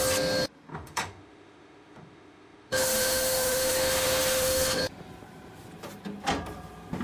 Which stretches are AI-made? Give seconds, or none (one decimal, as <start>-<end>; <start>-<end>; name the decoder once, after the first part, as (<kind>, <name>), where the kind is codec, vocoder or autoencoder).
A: 0.7-4.8 (autoencoder, DAC-VAE)